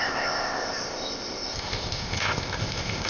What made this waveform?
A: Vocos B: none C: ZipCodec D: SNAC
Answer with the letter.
C